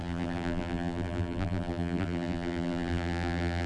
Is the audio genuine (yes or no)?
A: no